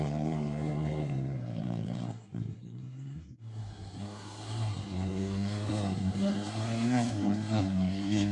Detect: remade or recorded remade